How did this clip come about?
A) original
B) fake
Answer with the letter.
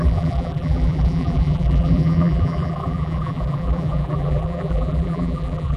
B